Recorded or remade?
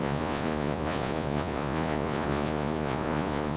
remade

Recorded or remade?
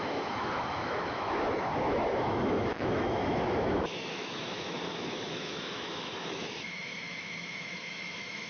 remade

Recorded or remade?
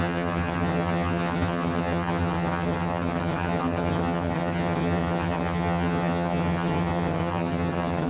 remade